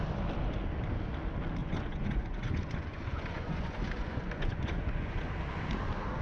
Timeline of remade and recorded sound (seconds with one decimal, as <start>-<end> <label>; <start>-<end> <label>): 0.0-1.6 recorded; 1.6-5.3 remade; 5.3-6.2 recorded